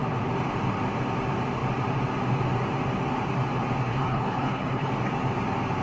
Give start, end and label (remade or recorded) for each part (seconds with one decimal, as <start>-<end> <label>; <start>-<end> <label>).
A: 0.0-3.9 recorded; 3.9-4.9 remade; 4.9-5.8 recorded